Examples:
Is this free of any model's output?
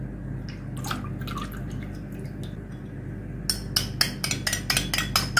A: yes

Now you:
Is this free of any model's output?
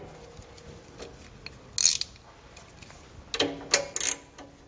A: yes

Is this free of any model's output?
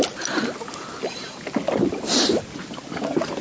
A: yes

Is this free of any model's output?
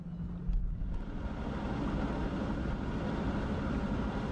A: yes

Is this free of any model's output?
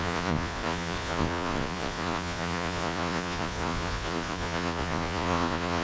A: no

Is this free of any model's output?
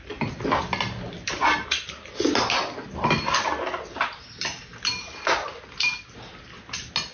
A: yes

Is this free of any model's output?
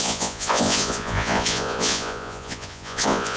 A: no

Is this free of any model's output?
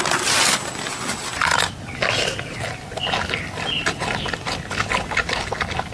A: yes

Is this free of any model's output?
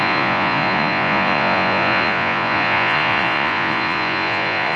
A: no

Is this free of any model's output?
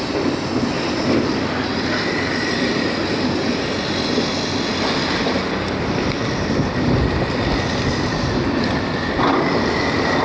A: yes